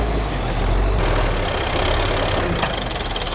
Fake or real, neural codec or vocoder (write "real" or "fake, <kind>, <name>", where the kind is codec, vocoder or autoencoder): real